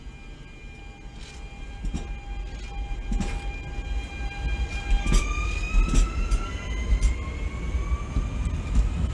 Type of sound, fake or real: real